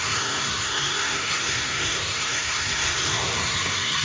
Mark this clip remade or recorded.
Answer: remade